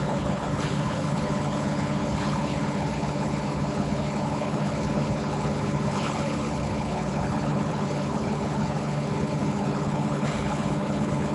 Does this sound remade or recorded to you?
remade